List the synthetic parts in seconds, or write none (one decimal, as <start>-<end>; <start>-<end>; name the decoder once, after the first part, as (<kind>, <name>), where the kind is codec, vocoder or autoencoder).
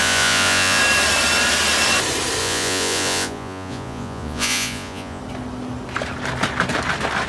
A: 0.0-0.8 (vocoder, Vocos); 2.4-5.2